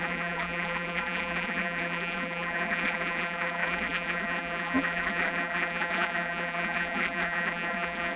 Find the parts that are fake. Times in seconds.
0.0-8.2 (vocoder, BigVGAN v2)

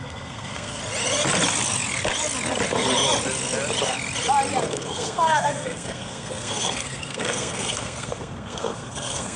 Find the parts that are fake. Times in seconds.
0.0-0.8 (codec, SNAC); 4.6-9.4